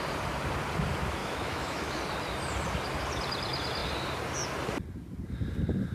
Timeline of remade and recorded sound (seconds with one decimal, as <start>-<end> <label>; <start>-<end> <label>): 0.0-1.2 recorded; 1.2-2.0 remade; 2.0-5.9 recorded